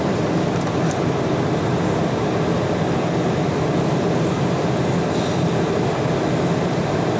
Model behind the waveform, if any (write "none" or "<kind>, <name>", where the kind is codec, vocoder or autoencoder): none